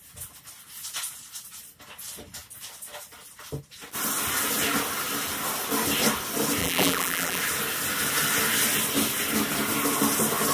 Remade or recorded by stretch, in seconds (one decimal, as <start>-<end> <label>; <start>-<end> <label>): 0.0-6.6 recorded; 6.6-7.4 remade; 7.4-10.5 recorded